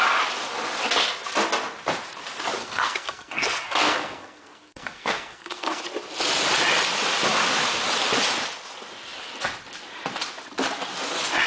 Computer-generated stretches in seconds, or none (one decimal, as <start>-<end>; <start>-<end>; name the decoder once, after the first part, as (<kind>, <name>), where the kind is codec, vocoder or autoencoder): 2.6-5.8 (codec, SNAC)